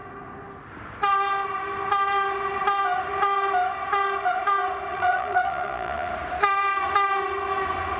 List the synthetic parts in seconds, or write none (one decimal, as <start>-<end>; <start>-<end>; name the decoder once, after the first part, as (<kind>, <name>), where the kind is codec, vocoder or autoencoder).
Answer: 4.9-6.1 (vocoder, Vocos)